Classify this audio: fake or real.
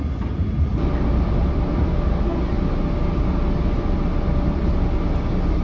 real